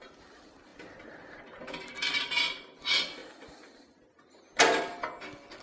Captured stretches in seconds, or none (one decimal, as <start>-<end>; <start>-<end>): 0.0-5.6